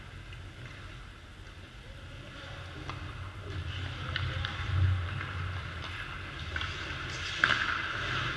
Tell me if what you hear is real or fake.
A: real